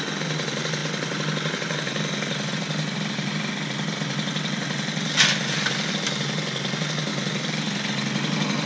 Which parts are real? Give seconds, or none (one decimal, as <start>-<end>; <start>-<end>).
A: 0.0-8.7